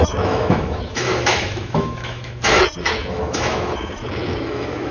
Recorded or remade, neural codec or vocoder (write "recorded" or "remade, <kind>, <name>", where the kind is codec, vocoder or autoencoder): remade, autoencoder, DAC-VAE